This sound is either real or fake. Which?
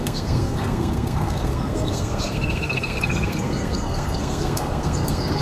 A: fake